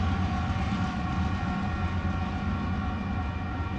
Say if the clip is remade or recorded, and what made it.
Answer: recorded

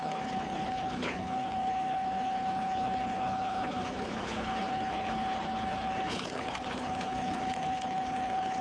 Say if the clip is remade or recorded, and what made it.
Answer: remade, codec, HILCodec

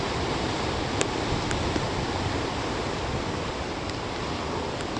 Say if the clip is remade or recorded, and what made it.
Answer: recorded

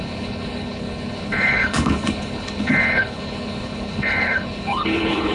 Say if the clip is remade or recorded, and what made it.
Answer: remade, codec, HILCodec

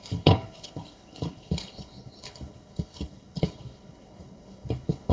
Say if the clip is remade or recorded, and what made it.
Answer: remade, codec, HILCodec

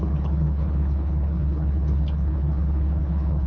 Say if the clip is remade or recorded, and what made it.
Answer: remade, codec, HILCodec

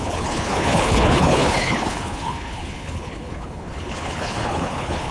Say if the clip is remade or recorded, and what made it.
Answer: remade, codec, HILCodec